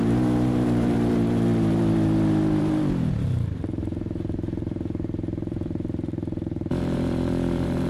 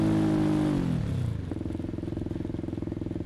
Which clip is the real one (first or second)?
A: second